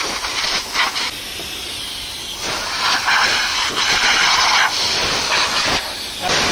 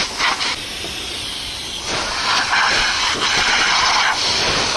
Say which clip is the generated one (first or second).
second